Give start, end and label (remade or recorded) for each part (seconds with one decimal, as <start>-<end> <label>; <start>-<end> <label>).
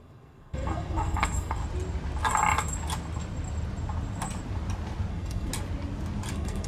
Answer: 0.0-1.6 remade; 1.6-5.1 recorded; 5.1-5.5 remade; 5.5-6.3 recorded; 6.3-6.7 remade